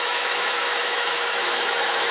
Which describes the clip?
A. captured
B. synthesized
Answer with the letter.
B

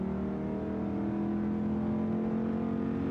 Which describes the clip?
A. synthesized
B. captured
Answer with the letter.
B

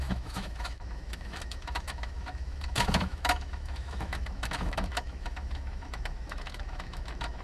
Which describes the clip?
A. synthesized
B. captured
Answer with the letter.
A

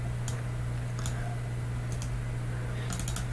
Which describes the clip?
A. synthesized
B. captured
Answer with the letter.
B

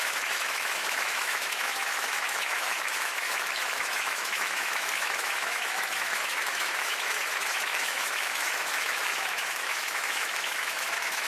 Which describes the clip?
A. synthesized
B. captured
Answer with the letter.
A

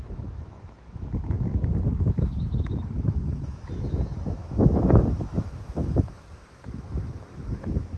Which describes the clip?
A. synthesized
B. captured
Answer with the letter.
A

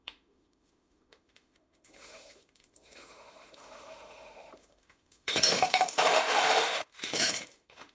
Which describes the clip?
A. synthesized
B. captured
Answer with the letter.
A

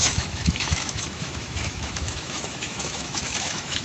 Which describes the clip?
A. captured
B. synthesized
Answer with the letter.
B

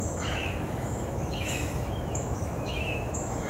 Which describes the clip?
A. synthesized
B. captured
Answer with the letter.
A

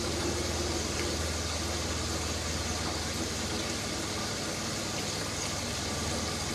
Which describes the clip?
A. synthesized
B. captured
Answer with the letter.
B